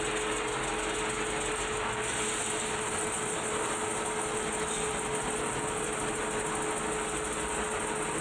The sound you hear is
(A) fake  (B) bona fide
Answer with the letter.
B